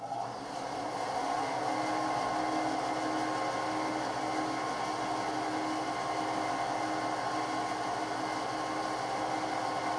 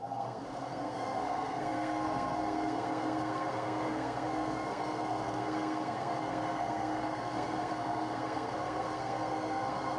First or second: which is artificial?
second